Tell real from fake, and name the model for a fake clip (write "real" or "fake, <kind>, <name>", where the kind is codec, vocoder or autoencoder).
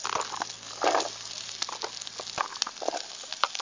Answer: real